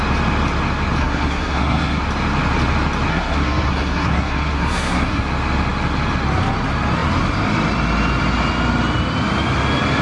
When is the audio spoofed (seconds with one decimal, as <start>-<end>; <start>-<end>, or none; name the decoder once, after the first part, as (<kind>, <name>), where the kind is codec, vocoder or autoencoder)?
1.0-2.0 (codec, SNAC); 3.1-5.2